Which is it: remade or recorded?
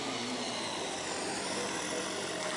recorded